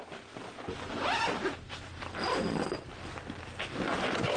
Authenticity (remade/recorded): recorded